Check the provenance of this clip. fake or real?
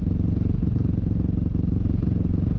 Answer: real